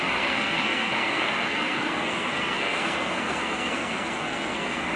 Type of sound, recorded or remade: remade